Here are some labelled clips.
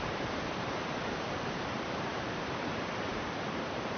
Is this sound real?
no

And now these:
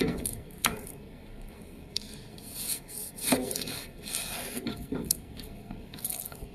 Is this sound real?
no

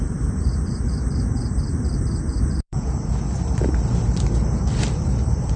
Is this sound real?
no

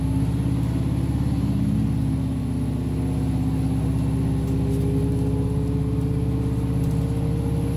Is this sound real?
yes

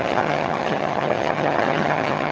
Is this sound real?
no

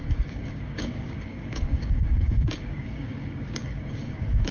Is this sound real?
no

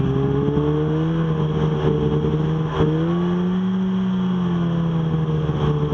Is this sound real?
yes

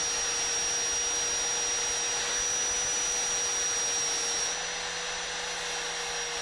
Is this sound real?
yes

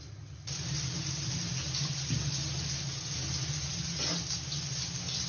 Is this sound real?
yes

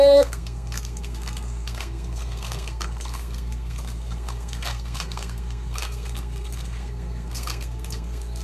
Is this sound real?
no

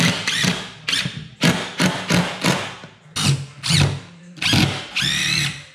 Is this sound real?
yes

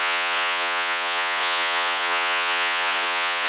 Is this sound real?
no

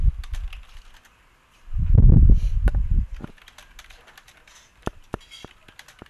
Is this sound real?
yes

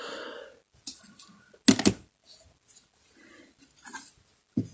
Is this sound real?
yes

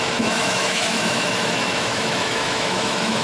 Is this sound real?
no